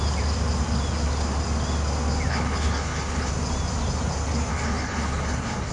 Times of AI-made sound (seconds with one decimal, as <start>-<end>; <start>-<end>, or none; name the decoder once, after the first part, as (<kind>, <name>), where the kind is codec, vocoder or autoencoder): 2.3-3.3 (codec, HILCodec); 4.5-5.7